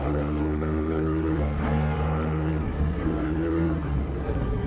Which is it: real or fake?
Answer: fake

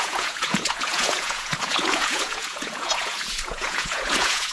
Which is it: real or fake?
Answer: fake